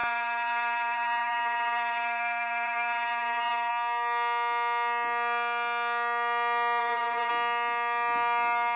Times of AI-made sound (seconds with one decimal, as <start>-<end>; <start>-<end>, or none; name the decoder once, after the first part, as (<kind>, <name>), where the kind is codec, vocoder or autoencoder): 0.0-3.7 (vocoder, BigVGAN v2); 6.8-7.3